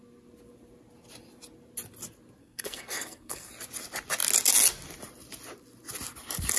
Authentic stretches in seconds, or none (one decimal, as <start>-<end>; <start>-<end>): 0.0-2.4; 3.5-6.6